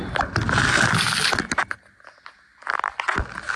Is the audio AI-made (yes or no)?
no